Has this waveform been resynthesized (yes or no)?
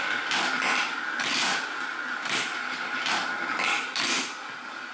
no